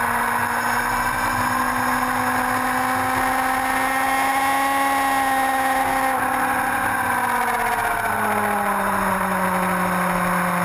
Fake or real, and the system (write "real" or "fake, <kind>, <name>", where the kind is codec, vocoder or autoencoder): real